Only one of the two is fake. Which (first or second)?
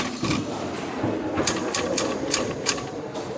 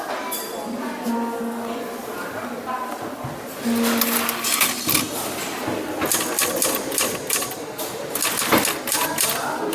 first